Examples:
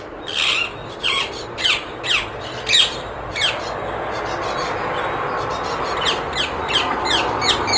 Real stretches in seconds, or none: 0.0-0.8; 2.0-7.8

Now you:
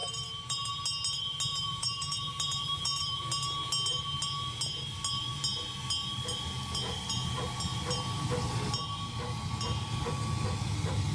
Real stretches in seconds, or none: 0.7-1.5; 3.2-11.1

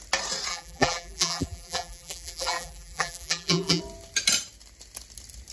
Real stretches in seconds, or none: 0.0-0.5; 3.8-5.5

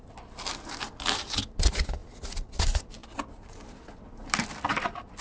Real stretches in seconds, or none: 0.0-3.0; 4.5-5.2

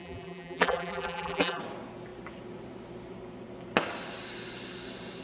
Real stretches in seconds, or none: 1.6-5.2

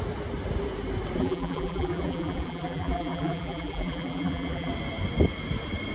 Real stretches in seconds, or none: 0.0-1.2; 4.7-5.9

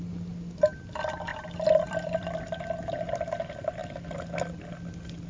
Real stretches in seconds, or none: 0.0-1.3; 3.1-5.3